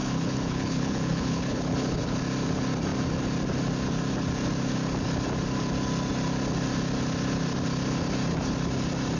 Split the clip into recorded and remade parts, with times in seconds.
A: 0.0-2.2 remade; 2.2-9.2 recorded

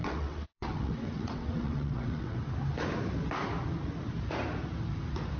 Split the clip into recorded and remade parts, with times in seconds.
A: 0.0-2.4 remade; 2.4-5.4 recorded

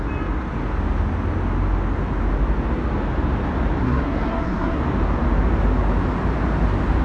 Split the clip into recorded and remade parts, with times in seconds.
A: 0.0-3.8 recorded; 3.8-4.8 remade; 4.8-7.0 recorded